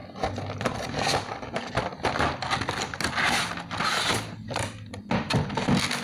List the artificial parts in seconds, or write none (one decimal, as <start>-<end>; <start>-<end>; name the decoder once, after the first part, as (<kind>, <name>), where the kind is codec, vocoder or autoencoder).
none